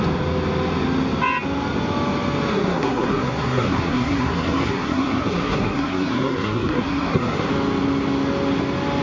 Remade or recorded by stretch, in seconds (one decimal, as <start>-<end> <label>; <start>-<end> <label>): 0.0-2.5 recorded; 2.5-7.5 remade; 7.5-9.0 recorded